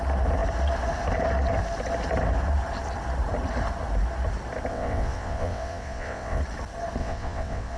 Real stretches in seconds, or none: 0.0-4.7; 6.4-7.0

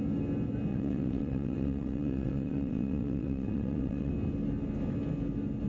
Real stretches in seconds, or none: 0.0-0.7; 4.1-5.7

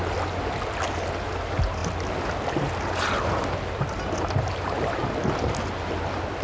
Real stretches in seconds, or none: 0.0-6.4

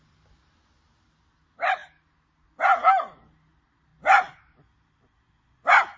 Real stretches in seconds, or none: 0.0-6.0

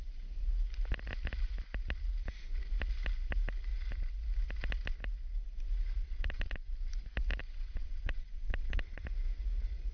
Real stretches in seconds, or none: 0.0-6.0; 6.7-7.4; 9.0-9.9

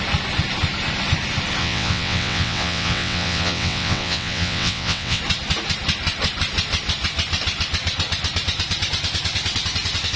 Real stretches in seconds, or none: 0.0-1.6; 5.2-10.2

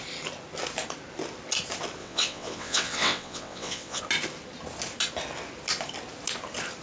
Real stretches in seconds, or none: 0.0-2.0; 4.0-6.8